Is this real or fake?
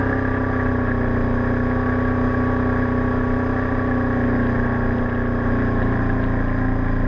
real